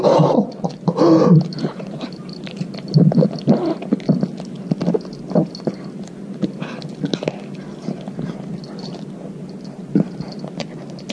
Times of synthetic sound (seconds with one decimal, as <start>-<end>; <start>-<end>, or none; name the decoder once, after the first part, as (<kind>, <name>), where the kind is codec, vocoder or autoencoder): 1.5-2.5 (vocoder, BigVGAN v2)